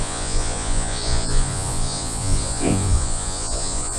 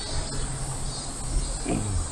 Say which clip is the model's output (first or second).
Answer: first